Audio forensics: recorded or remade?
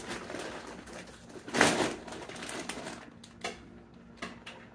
recorded